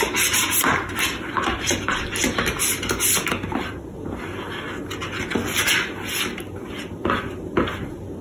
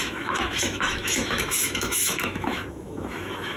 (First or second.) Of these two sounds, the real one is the first